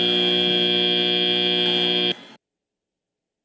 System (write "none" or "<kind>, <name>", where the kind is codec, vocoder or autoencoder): none